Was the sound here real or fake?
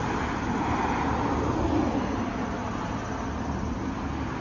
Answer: real